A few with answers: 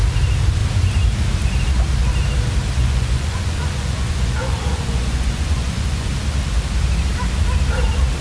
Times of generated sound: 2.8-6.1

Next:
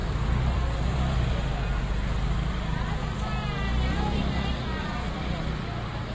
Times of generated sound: none

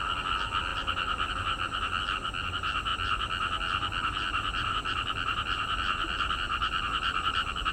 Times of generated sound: 0.7-1.3; 2.9-7.7

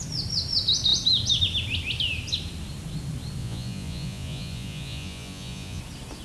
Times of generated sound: 3.4-5.8

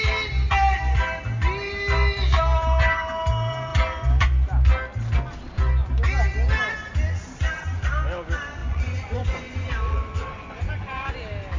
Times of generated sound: 8.6-11.1

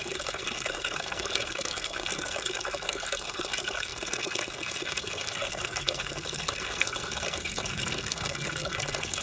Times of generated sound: 0.0-9.2